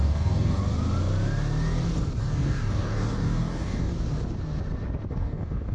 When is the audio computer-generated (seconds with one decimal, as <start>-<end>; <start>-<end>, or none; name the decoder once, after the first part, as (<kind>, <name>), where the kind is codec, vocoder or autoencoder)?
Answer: 0.0-0.6 (codec, DAC); 2.2-3.9; 5.1-5.7